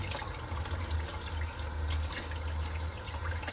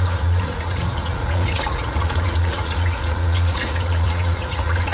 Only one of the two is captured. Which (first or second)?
first